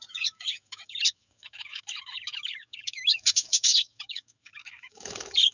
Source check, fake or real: fake